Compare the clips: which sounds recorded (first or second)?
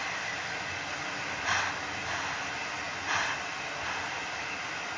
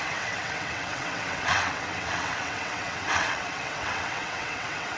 first